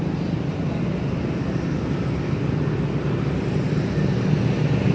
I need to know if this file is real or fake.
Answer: real